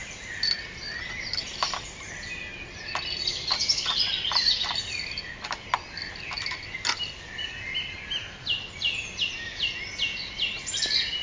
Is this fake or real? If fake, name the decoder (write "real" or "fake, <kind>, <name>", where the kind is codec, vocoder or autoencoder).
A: real